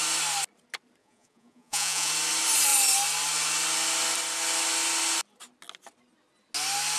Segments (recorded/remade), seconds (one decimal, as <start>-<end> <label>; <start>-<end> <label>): 0.0-1.0 recorded; 1.0-2.1 remade; 2.1-7.0 recorded